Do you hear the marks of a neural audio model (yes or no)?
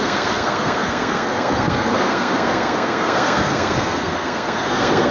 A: yes